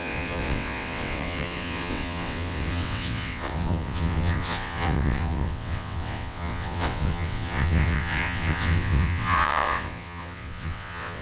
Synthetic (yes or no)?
yes